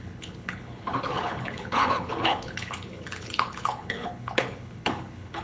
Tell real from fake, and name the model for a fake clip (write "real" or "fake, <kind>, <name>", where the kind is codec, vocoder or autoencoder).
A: fake, codec, HILCodec